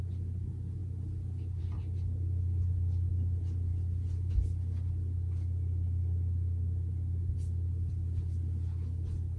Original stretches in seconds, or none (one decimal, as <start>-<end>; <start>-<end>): 0.0-9.4